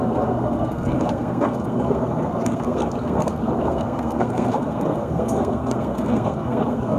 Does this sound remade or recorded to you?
remade